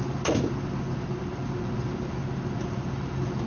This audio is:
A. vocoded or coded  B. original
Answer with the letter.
B